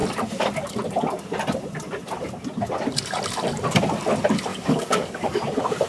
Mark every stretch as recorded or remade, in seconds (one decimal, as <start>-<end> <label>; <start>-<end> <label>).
0.0-4.5 recorded; 4.5-5.4 remade; 5.4-5.9 recorded